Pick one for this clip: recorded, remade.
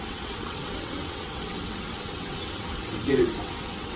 remade